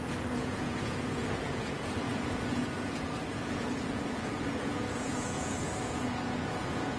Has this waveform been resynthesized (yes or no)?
yes